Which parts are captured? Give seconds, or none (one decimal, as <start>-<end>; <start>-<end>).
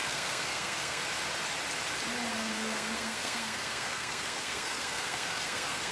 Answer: 1.0-2.3